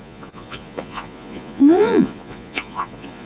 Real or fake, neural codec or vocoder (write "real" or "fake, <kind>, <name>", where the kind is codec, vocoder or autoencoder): fake, vocoder, Vocos